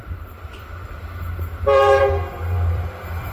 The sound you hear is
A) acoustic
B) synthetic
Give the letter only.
B